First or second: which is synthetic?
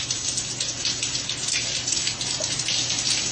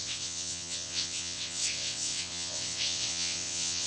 second